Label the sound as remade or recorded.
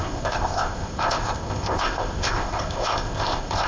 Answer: remade